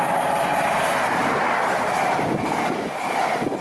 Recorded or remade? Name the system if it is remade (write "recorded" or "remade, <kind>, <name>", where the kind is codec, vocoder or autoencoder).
recorded